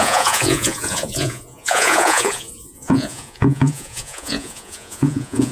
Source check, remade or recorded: remade